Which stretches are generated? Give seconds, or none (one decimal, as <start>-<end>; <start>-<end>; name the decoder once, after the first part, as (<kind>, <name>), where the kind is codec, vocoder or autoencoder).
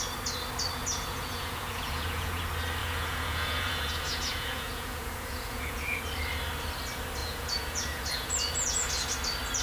0.8-2.4 (vocoder, Vocos); 2.8-6.0; 7.2-8.9